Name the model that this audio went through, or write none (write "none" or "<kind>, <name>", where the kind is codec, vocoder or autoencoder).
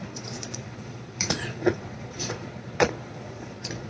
vocoder, Vocos